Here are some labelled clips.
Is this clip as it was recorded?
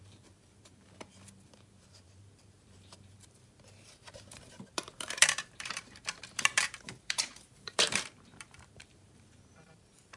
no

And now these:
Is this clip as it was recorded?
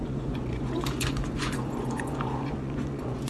no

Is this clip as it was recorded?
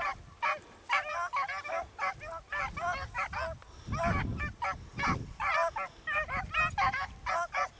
yes